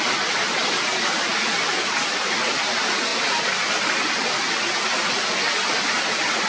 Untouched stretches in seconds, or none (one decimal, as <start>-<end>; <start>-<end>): 0.0-6.5